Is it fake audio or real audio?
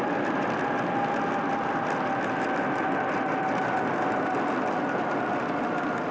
real